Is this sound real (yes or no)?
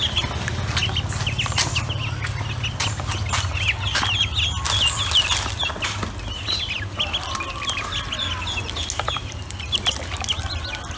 yes